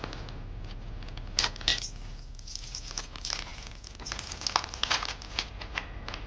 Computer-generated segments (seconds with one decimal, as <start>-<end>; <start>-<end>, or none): none